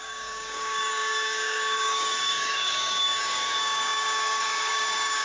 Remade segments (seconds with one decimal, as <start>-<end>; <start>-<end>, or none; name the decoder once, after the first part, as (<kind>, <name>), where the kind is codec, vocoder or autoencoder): 0.0-5.2 (codec, DAC)